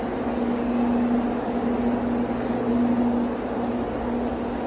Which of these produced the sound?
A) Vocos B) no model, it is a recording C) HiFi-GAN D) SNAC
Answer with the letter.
B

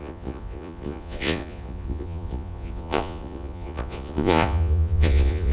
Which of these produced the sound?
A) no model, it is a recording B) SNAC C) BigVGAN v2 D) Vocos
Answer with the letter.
D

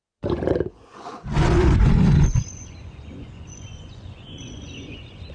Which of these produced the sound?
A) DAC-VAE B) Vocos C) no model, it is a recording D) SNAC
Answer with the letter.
B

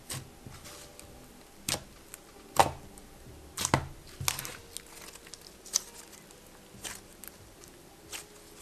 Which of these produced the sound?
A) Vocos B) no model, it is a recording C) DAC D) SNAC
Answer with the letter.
B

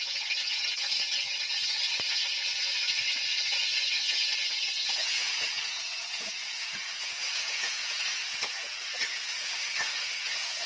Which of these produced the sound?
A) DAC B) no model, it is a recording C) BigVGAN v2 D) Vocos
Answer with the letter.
D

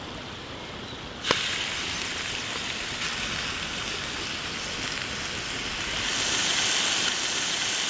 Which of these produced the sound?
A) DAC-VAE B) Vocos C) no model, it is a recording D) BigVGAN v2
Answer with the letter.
C